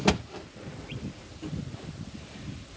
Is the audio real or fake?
fake